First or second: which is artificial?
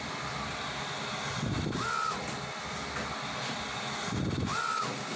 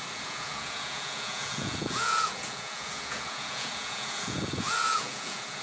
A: second